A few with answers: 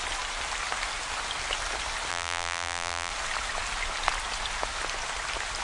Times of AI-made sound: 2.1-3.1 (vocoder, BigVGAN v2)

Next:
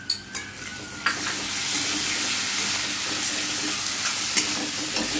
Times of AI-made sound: none

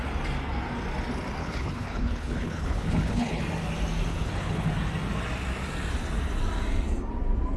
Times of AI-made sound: 1.4-3.4 (codec, HILCodec); 4.1-4.7

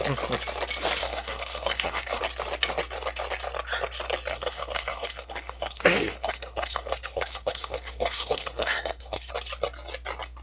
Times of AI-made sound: 1.0-2.2 (codec, SNAC); 4.3-9.3

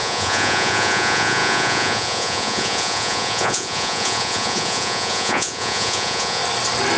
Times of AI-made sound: 0.0-6.4 (vocoder, Vocos)

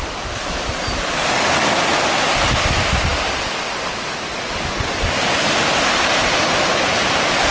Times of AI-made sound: none